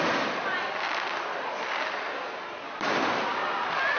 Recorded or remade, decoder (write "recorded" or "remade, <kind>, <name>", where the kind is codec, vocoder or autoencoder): remade, vocoder, BigVGAN v2